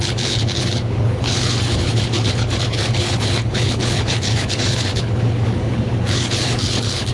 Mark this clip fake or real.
fake